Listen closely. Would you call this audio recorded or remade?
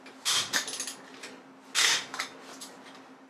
recorded